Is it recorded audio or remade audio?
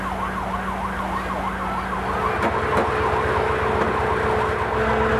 recorded